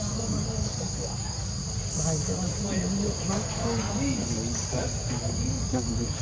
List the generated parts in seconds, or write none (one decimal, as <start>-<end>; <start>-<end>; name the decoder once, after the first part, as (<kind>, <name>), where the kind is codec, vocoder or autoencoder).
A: 0.0-1.6 (codec, DAC); 3.3-4.2; 5.2-6.2